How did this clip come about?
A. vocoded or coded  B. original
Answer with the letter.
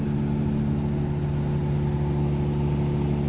B